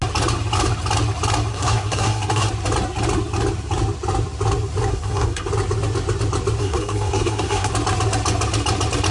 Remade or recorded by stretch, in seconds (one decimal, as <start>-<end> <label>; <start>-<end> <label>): 0.0-1.5 recorded; 1.5-2.5 remade; 2.5-4.9 recorded; 4.9-5.5 remade; 5.5-6.6 recorded; 6.6-7.7 remade; 7.7-9.1 recorded

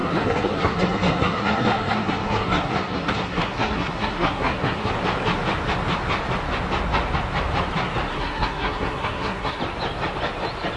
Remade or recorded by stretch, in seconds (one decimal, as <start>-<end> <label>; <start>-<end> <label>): 0.0-4.9 remade; 4.9-8.1 recorded; 8.1-9.6 remade; 9.6-10.8 recorded

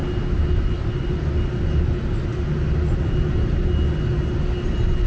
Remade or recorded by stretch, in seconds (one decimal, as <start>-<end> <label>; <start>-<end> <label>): 0.0-5.1 recorded

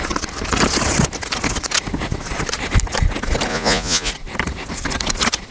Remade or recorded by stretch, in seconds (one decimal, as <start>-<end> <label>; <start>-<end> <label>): 0.0-3.5 recorded; 3.5-4.1 remade; 4.1-5.5 recorded

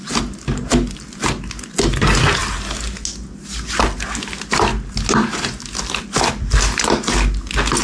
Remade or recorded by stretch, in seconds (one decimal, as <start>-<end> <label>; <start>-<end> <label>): 0.0-7.8 recorded

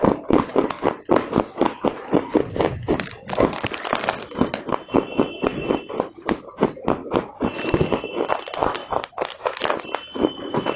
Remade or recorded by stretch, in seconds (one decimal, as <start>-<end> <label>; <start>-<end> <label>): 0.0-10.8 recorded